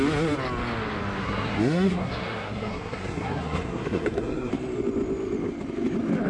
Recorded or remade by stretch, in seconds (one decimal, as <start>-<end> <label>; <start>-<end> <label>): 0.0-1.2 recorded; 1.2-4.5 remade; 4.5-6.3 recorded